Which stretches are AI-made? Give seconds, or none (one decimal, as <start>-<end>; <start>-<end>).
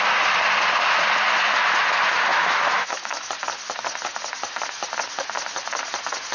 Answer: 2.3-3.3